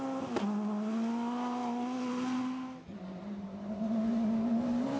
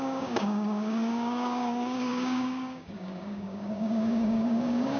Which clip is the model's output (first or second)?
second